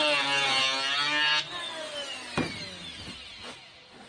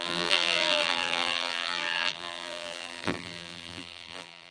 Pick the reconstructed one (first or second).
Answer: second